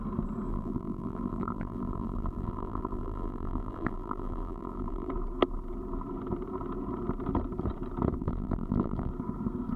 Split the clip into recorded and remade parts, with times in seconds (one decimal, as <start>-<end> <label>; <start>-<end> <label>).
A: 0.0-0.5 recorded; 0.5-5.1 remade; 5.1-8.2 recorded; 8.2-9.1 remade; 9.1-9.8 recorded